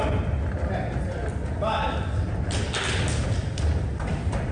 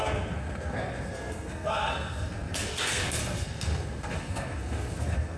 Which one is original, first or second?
first